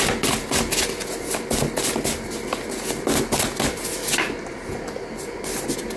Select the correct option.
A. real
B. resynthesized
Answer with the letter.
A